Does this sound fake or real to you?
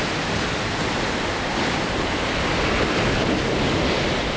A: real